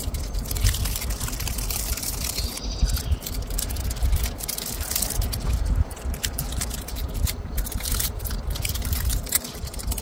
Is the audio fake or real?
fake